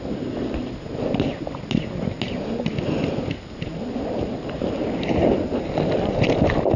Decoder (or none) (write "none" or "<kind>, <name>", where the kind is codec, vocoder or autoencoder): none